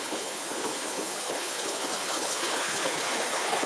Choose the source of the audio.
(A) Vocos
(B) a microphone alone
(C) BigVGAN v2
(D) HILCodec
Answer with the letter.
D